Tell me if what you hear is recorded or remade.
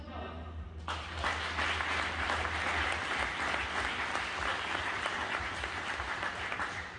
recorded